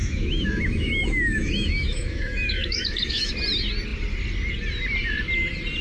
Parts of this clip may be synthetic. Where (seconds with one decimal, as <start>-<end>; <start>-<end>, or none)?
0.0-3.3